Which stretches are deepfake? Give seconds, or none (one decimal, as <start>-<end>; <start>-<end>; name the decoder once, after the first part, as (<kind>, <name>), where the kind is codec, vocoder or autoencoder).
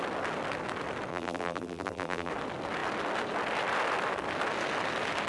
1.1-2.3 (vocoder, BigVGAN v2)